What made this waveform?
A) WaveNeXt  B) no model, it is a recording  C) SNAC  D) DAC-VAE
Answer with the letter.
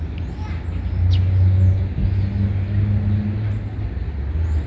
B